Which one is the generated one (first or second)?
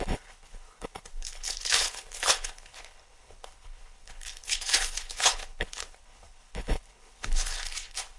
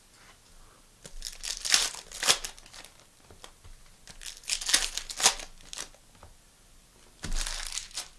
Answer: first